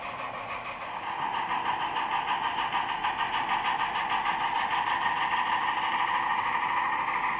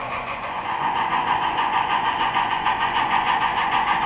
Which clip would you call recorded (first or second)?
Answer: first